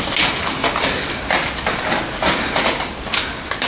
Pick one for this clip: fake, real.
real